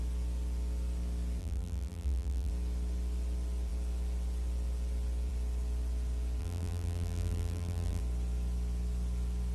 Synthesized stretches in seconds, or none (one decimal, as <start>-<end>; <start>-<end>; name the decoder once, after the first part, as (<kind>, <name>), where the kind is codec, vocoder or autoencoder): 1.4-2.5 (vocoder, BigVGAN v2); 6.4-8.0